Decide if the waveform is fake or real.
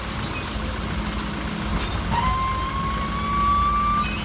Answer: real